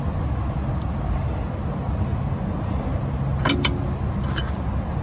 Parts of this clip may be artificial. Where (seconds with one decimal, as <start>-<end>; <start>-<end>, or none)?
none